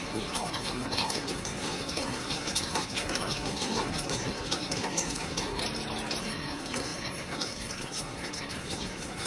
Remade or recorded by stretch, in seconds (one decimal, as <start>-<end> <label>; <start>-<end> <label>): 0.0-5.6 remade; 5.6-6.2 recorded; 6.2-9.3 remade